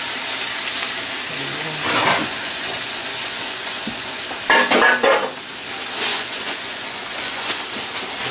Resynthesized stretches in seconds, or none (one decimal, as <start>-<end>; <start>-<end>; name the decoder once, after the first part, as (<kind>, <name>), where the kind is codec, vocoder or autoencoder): 2.2-4.2 (vocoder, Vocos); 6.1-7.5